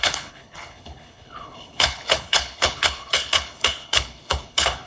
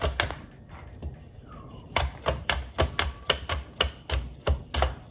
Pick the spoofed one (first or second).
first